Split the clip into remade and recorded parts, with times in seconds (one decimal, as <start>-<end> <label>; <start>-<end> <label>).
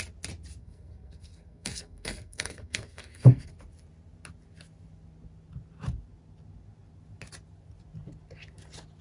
0.0-0.6 recorded; 0.6-3.5 remade; 3.5-9.0 recorded